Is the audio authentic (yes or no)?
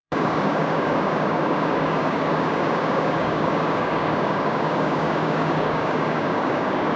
no